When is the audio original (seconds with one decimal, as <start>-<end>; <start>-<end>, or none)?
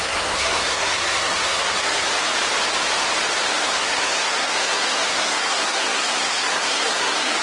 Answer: 2.1-3.5